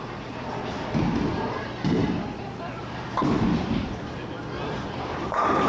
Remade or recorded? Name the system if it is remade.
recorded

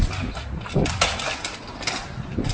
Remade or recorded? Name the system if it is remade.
recorded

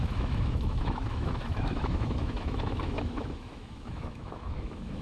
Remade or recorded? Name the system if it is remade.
remade, autoencoder, DAC-VAE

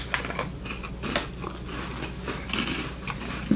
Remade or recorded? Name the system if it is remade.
recorded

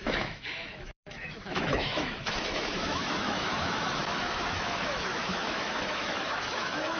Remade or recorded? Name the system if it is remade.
remade, autoencoder, DAC-VAE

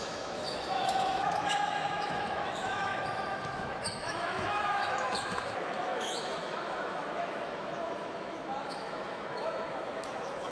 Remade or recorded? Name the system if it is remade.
remade, autoencoder, DAC-VAE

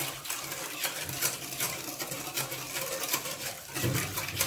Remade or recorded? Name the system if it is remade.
recorded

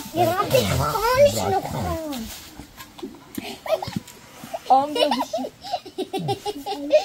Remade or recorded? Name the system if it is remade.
recorded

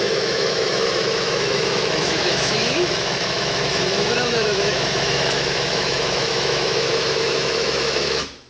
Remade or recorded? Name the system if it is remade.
remade, autoencoder, DAC-VAE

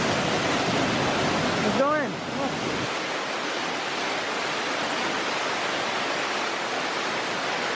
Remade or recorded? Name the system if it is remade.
recorded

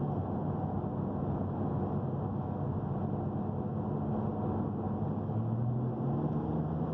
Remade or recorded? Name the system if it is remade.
recorded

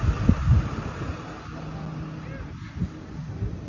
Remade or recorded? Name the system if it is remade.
recorded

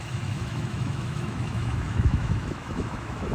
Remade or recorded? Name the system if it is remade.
remade, autoencoder, DAC-VAE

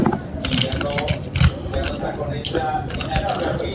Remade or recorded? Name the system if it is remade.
recorded